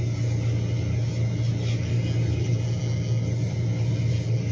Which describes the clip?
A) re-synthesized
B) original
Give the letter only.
B